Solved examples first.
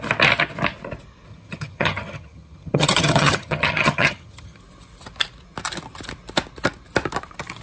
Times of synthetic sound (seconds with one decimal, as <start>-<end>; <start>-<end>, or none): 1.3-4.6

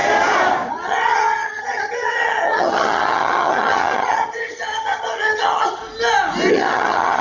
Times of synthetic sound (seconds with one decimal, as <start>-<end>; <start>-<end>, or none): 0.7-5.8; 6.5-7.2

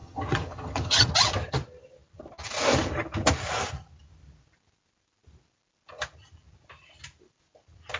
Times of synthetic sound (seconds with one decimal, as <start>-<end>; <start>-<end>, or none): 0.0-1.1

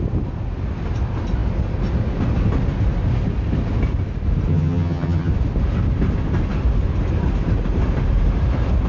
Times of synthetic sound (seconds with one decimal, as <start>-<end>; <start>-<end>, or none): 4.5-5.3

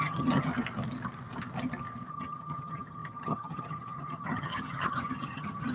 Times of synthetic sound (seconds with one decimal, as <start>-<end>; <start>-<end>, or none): 0.0-0.5; 2.1-5.7